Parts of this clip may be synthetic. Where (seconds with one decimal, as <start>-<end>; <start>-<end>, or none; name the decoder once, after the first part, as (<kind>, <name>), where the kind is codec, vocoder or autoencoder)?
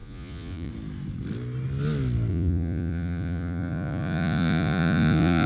0.0-0.7 (vocoder, Vocos); 2.3-5.5